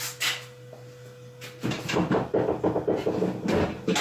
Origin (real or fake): real